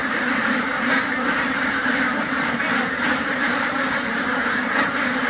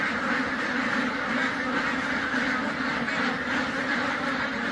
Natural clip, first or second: second